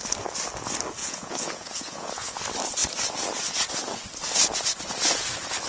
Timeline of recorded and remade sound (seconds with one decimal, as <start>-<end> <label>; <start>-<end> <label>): 0.0-1.0 recorded; 1.0-2.4 remade; 2.4-5.7 recorded

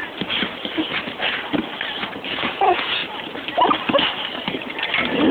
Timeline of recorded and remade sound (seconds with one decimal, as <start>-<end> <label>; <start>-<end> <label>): 0.0-2.3 recorded; 2.3-3.0 remade; 3.0-5.3 recorded